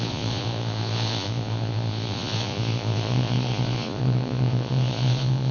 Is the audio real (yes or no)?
no